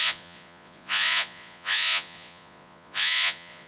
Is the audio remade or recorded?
remade